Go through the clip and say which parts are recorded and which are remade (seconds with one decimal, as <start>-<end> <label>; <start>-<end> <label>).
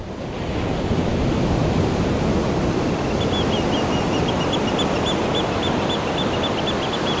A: 0.0-7.2 recorded